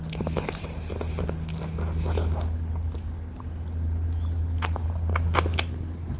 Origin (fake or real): real